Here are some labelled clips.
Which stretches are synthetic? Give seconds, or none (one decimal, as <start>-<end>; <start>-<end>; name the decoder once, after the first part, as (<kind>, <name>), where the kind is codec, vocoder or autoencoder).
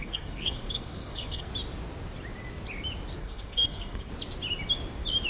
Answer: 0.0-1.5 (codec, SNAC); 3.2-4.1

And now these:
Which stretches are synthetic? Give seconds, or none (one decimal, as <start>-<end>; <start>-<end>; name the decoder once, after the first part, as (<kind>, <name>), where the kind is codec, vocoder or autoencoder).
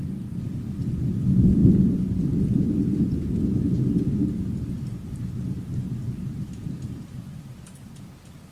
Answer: 1.6-2.2 (vocoder, BigVGAN v2); 4.1-8.5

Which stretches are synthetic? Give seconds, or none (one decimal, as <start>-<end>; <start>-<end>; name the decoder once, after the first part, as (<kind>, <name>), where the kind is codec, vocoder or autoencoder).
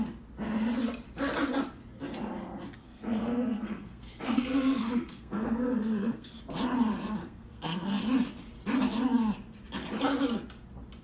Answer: 2.8-6.4 (codec, SNAC); 7.2-8.0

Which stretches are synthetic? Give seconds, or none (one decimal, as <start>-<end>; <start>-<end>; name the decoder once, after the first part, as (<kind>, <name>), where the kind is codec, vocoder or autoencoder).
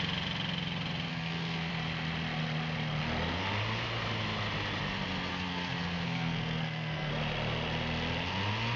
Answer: 1.1-1.7 (codec, SNAC); 5.3-7.1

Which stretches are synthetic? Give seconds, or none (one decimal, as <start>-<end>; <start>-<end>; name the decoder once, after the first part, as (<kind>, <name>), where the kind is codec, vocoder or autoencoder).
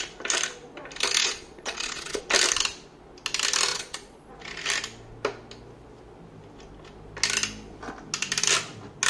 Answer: 1.2-2.2 (vocoder, Vocos); 3.7-4.3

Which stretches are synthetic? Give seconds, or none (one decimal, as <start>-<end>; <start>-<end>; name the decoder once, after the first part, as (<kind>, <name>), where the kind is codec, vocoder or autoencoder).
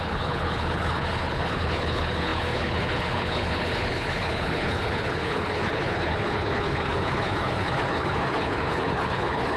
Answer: 0.0-9.6 (codec, HILCodec)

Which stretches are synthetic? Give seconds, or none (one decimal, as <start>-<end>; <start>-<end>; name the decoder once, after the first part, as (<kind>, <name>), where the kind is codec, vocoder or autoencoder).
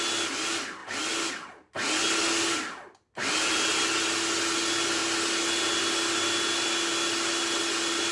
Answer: none